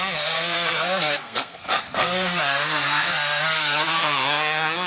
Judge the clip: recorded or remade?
remade